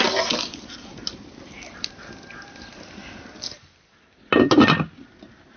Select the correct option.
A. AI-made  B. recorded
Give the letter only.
B